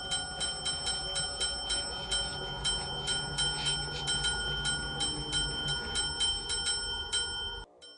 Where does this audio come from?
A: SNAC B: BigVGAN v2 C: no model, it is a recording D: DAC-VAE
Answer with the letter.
C